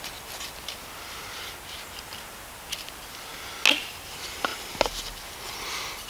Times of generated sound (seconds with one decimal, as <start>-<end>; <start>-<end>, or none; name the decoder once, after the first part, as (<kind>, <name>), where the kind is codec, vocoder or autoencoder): none